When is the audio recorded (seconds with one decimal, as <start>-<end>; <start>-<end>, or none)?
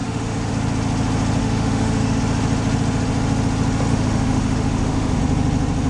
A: 0.5-1.4; 2.2-3.9; 5.2-5.9